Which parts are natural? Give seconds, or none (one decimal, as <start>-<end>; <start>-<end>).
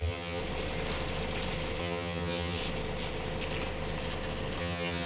0.4-1.8; 2.6-4.6